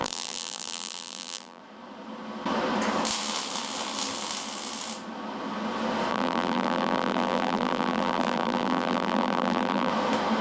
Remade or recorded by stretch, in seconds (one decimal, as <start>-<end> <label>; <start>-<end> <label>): 0.0-1.6 remade; 1.6-6.1 recorded; 6.1-9.9 remade; 9.9-10.4 recorded